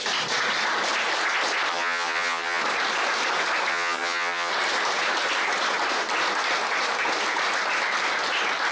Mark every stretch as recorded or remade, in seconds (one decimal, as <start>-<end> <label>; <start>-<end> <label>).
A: 0.0-1.7 recorded; 1.7-2.6 remade; 2.6-3.7 recorded; 3.7-4.5 remade; 4.5-8.7 recorded